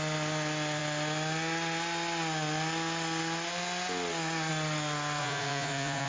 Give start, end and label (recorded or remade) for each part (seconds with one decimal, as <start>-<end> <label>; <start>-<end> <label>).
0.0-5.2 recorded; 5.2-6.1 remade